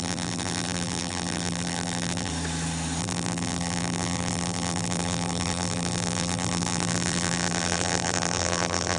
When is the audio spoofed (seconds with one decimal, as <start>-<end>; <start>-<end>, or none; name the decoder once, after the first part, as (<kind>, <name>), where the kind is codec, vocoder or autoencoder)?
0.0-2.3 (vocoder, BigVGAN v2); 3.0-9.0